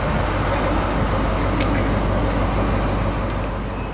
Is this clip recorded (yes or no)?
yes